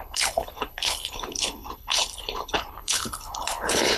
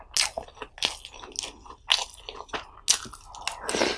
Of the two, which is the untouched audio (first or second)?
second